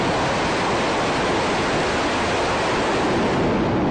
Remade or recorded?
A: recorded